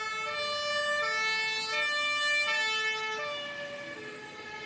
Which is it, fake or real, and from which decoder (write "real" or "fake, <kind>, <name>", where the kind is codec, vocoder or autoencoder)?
real